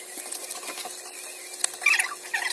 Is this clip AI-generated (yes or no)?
no